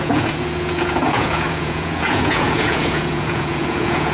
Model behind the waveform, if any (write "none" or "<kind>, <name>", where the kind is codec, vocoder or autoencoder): vocoder, Vocos